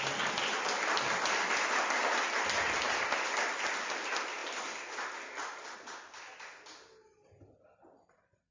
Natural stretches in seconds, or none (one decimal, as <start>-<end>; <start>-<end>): 0.0-8.5